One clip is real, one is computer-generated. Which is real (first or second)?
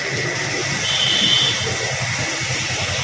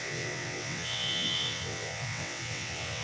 first